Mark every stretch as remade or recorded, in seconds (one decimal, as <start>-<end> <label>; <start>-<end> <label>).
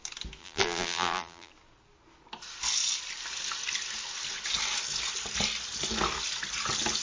0.0-0.4 recorded; 0.4-1.5 remade; 1.5-7.0 recorded